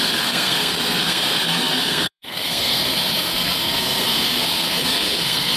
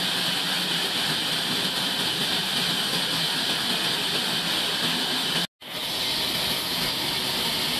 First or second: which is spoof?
first